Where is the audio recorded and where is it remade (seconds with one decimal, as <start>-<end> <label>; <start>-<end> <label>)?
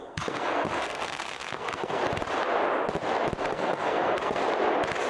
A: 0.0-2.0 remade; 2.0-3.4 recorded; 3.4-4.4 remade; 4.4-5.1 recorded